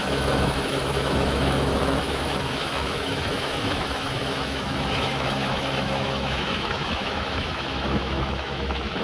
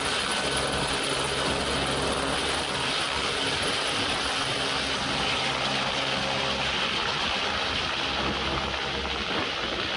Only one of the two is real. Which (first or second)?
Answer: second